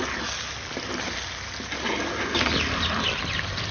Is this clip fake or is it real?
real